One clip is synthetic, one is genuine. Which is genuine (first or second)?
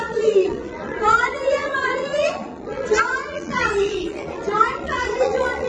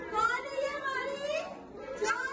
second